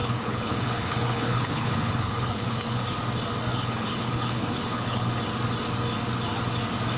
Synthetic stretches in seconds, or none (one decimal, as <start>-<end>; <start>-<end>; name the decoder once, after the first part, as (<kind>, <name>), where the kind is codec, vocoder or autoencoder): 0.0-2.9 (codec, HILCodec); 3.5-5.1